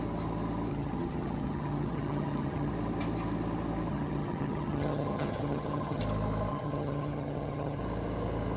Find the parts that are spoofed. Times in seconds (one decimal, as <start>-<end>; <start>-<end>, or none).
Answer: 0.7-2.7; 3.9-6.0; 6.5-7.8